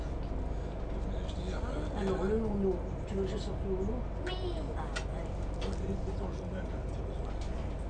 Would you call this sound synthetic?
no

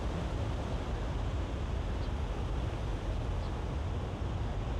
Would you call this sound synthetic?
no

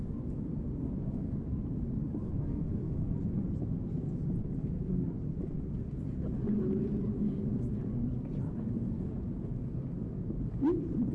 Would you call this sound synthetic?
no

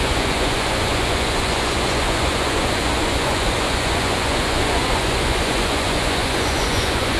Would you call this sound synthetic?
yes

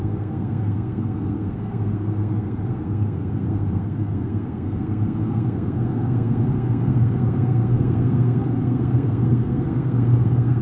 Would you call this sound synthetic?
yes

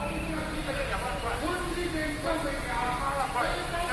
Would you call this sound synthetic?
no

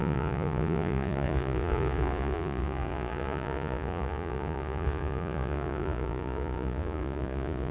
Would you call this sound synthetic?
yes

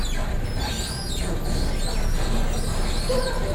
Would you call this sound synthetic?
no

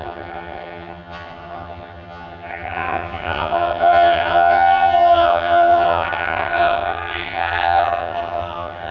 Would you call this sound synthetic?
yes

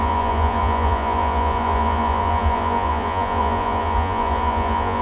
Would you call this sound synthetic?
yes